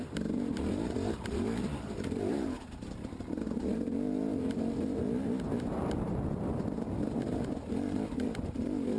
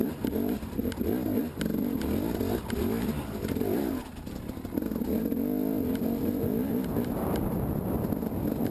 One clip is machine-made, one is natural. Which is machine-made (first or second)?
first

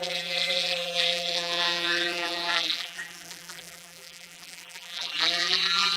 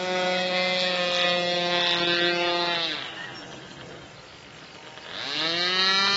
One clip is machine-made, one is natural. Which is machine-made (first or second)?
first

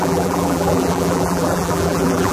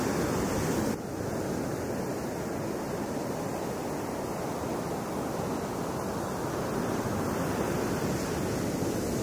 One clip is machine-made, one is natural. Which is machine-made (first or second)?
first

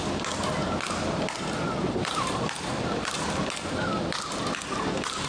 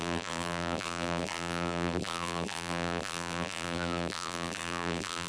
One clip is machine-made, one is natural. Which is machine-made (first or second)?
second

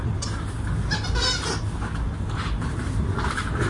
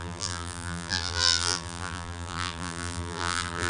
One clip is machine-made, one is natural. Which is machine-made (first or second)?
second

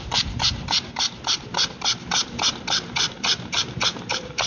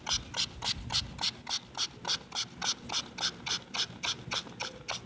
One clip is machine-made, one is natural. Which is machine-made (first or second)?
first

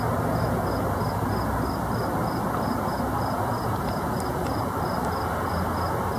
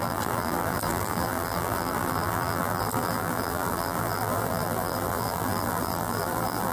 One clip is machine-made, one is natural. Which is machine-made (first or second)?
second